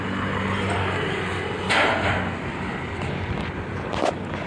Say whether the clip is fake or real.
real